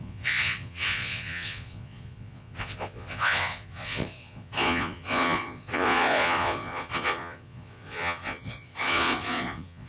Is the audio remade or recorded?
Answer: remade